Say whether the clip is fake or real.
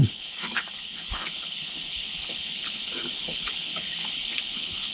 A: fake